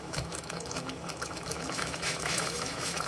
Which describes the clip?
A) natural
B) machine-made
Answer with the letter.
B